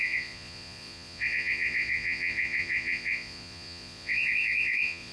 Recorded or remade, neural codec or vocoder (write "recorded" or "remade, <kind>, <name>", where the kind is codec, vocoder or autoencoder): remade, vocoder, Vocos